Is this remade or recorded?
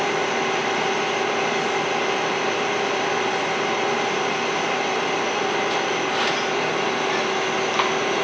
recorded